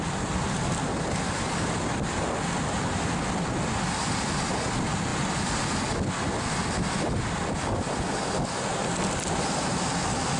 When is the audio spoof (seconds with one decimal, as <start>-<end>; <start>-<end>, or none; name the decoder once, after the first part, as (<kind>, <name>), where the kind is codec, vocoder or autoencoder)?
none